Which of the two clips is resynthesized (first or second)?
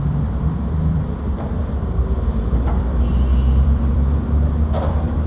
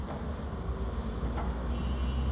first